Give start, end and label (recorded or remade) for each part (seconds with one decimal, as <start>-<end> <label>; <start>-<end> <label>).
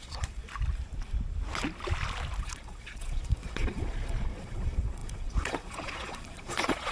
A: 0.0-0.4 remade; 0.4-2.4 recorded; 2.4-6.9 remade